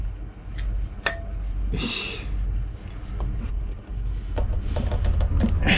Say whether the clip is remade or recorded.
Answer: recorded